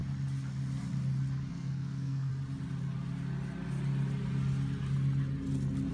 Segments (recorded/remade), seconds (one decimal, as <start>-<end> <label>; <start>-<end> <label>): 0.0-1.5 recorded; 1.5-2.3 remade; 2.3-5.9 recorded